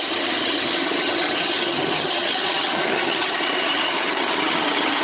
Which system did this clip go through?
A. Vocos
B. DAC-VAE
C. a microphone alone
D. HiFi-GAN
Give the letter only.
D